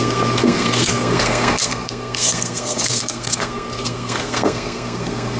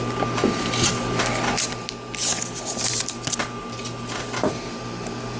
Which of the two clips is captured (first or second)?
second